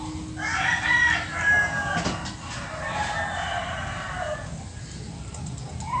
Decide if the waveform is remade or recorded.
recorded